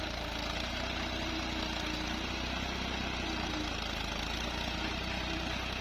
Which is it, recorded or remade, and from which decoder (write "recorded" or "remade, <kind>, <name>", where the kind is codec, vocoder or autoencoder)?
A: recorded